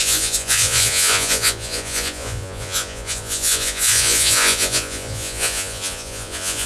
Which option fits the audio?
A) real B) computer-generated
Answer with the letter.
B